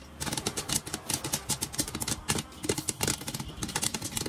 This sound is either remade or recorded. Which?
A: recorded